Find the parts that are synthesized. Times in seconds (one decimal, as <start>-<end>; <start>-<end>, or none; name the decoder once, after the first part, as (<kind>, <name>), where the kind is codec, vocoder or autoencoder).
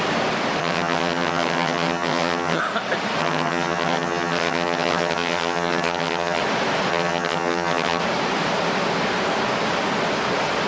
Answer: 0.6-2.6 (vocoder, HiFi-GAN); 3.2-6.4; 6.9-8.0